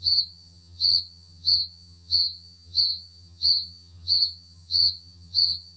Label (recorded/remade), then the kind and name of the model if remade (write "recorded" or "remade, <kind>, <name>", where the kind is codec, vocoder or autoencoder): remade, vocoder, HiFi-GAN